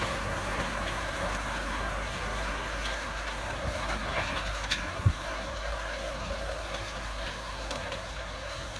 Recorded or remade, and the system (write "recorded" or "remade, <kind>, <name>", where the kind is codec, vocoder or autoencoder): remade, codec, SNAC